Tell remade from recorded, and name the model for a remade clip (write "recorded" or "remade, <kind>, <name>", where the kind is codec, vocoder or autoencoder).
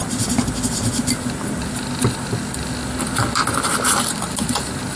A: recorded